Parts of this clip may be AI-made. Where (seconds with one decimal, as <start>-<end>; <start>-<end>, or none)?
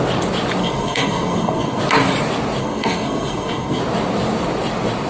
0.6-1.8; 2.6-3.8